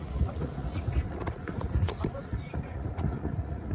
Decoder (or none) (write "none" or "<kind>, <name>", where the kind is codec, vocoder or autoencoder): vocoder, Vocos